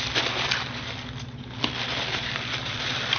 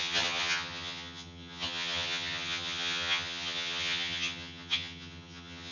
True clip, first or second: first